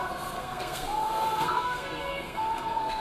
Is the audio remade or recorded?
remade